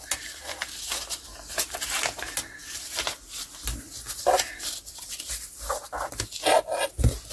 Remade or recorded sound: recorded